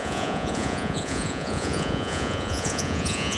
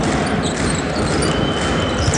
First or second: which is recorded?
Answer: second